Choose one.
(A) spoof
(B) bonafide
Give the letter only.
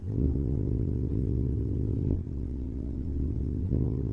A